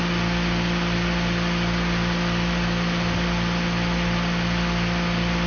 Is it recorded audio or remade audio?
recorded